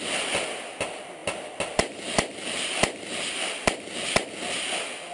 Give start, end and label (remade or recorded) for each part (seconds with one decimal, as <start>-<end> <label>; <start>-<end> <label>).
0.0-1.2 recorded; 1.2-4.3 remade; 4.3-5.1 recorded